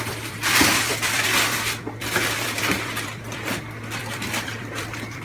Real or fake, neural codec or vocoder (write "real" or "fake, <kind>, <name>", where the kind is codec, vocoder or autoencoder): fake, vocoder, BigVGAN v2